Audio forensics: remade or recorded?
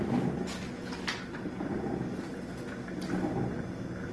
recorded